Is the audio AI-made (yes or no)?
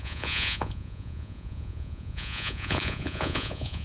yes